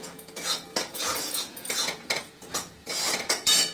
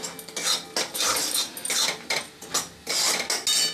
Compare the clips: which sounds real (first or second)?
second